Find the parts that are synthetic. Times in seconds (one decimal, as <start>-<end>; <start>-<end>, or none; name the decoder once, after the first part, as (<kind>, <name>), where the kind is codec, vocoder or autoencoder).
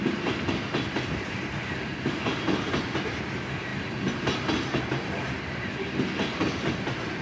none